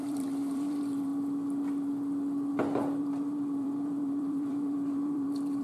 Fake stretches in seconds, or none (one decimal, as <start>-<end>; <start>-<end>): 0.0-1.1; 3.0-5.6